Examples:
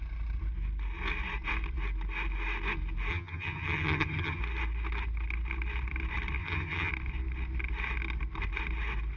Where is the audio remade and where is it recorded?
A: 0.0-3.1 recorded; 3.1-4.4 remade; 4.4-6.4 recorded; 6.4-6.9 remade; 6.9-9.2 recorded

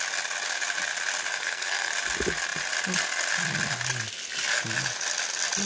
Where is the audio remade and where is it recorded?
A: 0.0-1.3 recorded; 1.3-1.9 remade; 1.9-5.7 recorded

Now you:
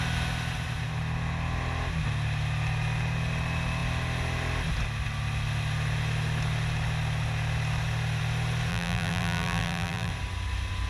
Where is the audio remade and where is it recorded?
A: 0.0-8.7 recorded; 8.7-10.1 remade; 10.1-10.9 recorded

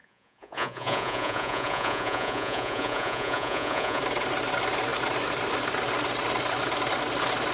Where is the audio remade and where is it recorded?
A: 0.0-4.0 remade; 4.0-7.5 recorded